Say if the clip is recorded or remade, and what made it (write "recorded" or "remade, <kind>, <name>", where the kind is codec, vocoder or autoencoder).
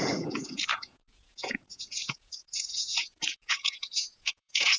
remade, vocoder, Vocos